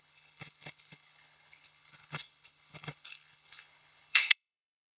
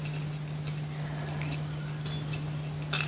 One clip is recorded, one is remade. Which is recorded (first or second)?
second